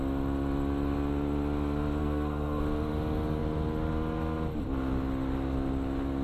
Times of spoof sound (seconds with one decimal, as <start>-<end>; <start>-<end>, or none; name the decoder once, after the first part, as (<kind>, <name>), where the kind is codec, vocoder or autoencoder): 2.0-2.6 (codec, SNAC)